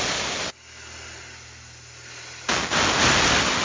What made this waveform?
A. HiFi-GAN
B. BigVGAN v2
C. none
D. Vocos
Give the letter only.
C